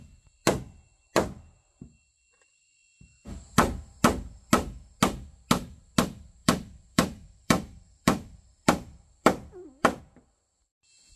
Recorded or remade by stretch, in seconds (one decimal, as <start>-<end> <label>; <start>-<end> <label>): 0.0-6.4 recorded; 6.4-10.0 remade; 10.0-11.2 recorded